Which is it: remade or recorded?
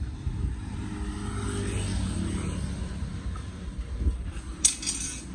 recorded